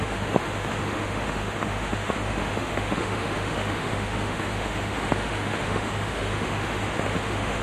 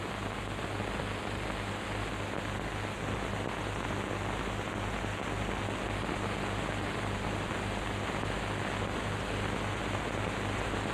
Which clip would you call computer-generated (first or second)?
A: first